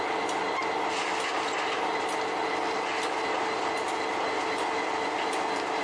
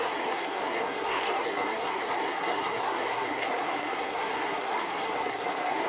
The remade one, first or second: second